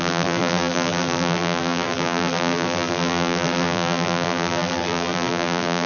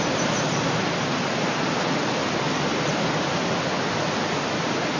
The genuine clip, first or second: second